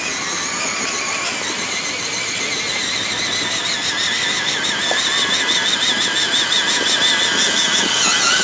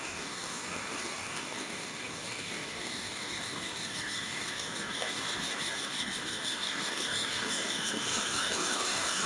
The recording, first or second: first